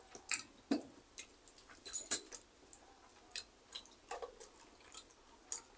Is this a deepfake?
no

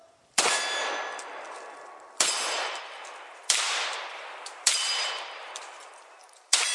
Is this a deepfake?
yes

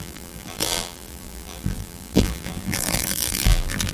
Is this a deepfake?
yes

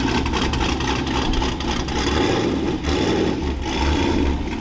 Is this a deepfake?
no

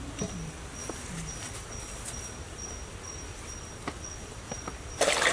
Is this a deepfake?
no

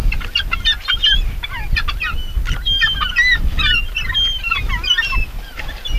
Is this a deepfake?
no